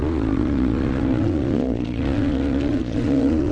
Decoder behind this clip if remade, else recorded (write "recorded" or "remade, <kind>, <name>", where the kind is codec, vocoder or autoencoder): remade, vocoder, Vocos